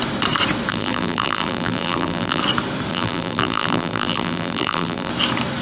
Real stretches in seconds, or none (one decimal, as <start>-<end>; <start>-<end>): 0.0-0.7; 2.4-2.9; 5.1-5.6